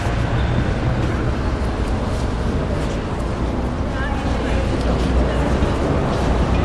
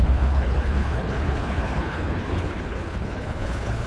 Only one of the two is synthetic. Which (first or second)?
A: second